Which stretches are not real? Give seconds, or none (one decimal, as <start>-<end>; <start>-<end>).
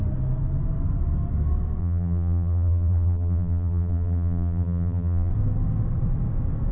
1.8-5.3